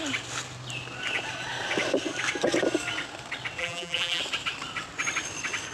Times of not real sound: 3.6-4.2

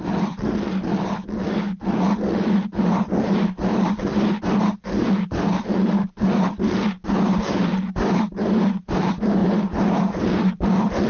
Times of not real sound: 0.0-11.1

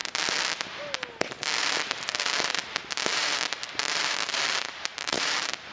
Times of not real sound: 3.1-4.4; 4.9-5.7

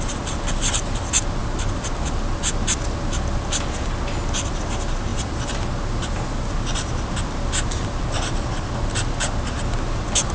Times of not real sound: none